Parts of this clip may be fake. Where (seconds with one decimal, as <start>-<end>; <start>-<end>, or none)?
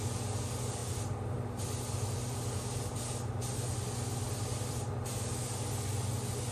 none